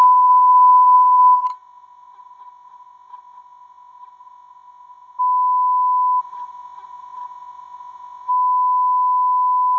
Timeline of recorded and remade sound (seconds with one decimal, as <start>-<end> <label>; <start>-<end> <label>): 0.0-5.2 remade; 5.2-6.2 recorded; 6.2-8.3 remade; 8.3-9.8 recorded